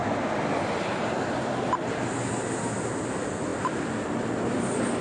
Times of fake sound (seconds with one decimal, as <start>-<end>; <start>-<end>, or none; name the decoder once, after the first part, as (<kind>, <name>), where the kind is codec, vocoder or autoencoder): 3.5-4.2 (vocoder, BigVGAN v2)